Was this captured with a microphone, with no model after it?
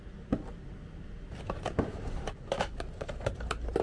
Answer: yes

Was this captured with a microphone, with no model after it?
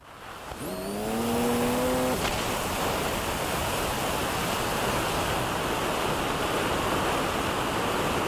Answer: yes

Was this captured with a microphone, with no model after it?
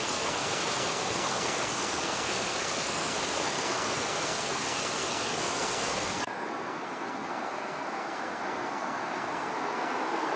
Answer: no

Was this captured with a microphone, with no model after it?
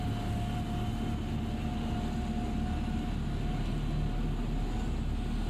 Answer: yes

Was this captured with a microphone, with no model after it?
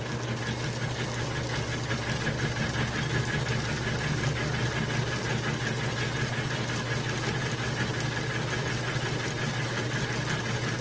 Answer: yes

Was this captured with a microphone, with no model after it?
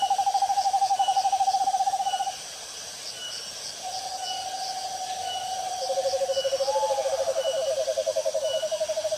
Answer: yes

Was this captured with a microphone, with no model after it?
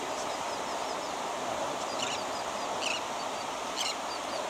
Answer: yes